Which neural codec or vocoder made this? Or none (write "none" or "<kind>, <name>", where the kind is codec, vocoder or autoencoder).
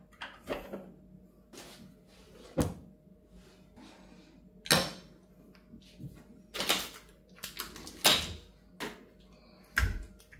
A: none